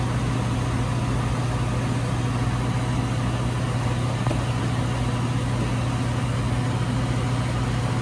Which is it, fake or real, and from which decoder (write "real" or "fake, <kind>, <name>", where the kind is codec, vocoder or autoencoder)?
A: real